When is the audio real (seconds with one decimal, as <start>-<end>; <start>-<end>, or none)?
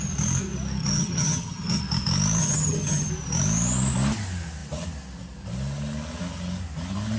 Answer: 0.0-0.8; 1.8-2.4; 3.1-7.2